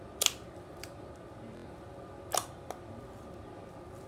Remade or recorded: recorded